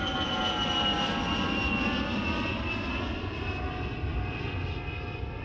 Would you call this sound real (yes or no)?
yes